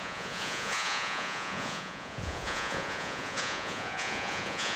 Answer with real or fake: fake